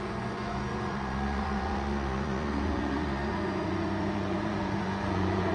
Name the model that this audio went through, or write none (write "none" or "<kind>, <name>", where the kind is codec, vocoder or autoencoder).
vocoder, Vocos